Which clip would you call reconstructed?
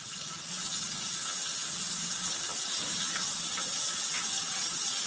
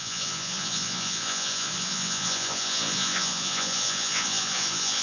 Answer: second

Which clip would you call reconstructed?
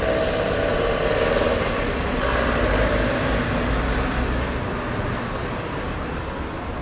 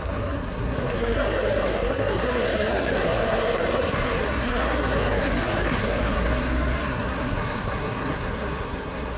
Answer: second